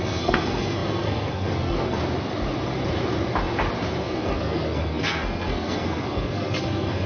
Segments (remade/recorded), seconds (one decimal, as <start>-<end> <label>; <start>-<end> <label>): 0.0-2.0 remade; 2.0-4.0 recorded; 4.0-7.1 remade